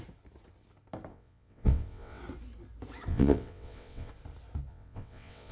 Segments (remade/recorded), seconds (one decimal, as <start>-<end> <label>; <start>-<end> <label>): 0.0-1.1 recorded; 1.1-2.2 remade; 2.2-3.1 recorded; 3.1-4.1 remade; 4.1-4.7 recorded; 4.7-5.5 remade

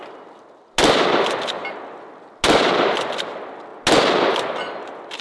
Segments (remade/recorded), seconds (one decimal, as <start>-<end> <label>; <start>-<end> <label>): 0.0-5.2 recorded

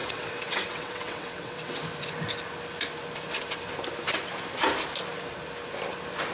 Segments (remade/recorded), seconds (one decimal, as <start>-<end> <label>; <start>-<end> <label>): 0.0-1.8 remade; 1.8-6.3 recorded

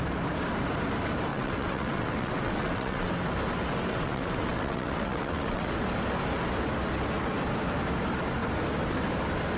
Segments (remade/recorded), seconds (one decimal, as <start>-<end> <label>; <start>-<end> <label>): 0.0-1.3 recorded; 1.3-3.1 remade; 3.1-3.9 recorded; 3.9-5.7 remade; 5.7-9.6 recorded

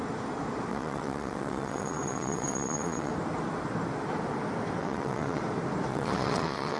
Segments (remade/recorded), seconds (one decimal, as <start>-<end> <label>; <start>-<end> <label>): 0.0-0.7 recorded; 0.7-3.1 remade; 3.1-4.8 recorded; 4.8-5.4 remade; 5.4-5.9 recorded; 5.9-6.8 remade